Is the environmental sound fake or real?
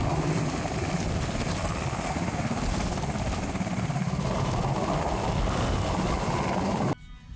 real